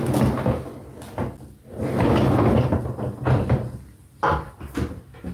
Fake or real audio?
real